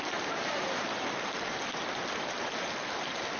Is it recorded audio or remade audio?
recorded